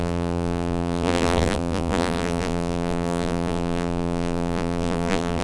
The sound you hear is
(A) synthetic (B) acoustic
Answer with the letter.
A